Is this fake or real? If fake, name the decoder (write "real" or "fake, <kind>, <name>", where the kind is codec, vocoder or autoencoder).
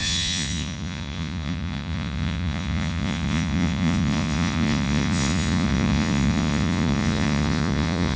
fake, vocoder, Vocos